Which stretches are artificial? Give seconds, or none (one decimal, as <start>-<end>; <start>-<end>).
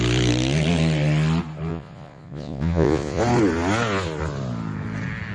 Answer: 1.7-3.2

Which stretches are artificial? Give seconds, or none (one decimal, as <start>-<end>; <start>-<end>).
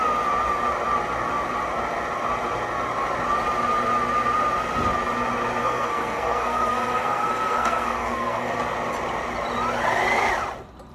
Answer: 5.6-8.6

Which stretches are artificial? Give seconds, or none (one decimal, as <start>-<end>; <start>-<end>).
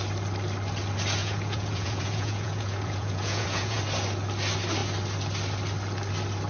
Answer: 1.2-3.8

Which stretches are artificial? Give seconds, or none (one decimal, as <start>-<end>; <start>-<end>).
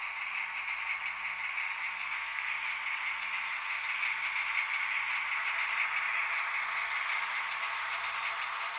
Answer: 2.0-2.5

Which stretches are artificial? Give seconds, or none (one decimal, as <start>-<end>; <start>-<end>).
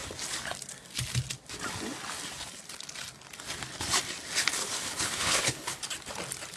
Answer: 4.6-5.8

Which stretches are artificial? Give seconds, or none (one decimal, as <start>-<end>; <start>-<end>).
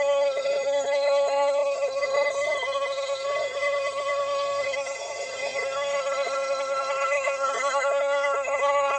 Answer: 0.0-9.0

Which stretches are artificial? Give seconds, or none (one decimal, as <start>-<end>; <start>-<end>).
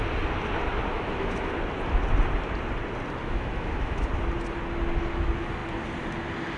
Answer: 0.9-1.5; 3.2-4.1